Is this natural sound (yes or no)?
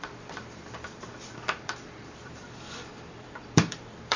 no